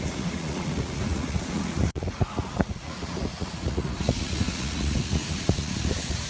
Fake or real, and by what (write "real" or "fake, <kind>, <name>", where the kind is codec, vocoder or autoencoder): fake, vocoder, Vocos